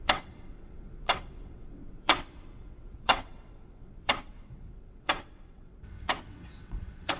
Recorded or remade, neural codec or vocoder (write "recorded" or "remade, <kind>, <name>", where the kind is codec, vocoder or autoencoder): remade, vocoder, WaveNeXt